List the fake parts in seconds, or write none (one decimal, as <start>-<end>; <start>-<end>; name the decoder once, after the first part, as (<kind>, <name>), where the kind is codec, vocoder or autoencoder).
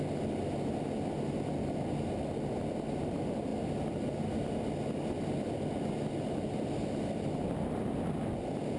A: none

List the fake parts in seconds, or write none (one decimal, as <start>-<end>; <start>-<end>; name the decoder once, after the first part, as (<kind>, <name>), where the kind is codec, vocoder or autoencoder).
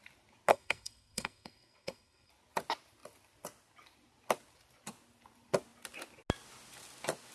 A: 0.5-2.3 (codec, SNAC)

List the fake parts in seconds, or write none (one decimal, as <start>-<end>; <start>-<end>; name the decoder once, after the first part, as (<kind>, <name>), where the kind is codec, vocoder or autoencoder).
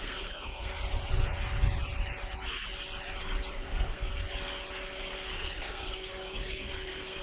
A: 0.0-0.7 (codec, SNAC); 3.5-4.1; 5.3-7.2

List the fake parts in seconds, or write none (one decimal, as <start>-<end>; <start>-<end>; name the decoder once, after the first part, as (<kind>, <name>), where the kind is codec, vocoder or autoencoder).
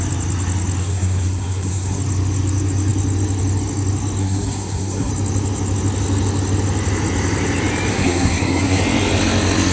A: 0.8-2.0 (codec, SNAC); 4.2-5.1; 7.9-8.8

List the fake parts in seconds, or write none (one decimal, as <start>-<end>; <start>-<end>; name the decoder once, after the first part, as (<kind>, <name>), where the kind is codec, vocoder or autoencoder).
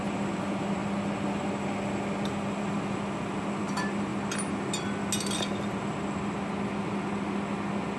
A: none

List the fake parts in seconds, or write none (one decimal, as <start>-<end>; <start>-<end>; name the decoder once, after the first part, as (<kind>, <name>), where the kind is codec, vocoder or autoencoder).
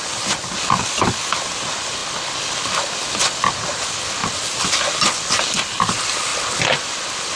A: 0.6-2.0 (vocoder, BigVGAN v2); 3.8-4.2; 5.4-6.3; 6.9-7.4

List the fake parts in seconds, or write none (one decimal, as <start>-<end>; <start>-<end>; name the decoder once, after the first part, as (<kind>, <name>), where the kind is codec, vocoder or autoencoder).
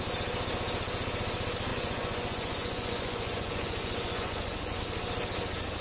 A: 1.7-4.8 (vocoder, Vocos)